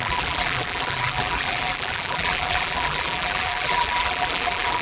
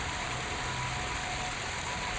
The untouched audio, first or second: second